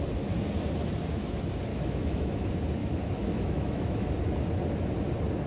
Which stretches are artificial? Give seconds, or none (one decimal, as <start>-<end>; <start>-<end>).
1.7-2.3; 2.8-4.1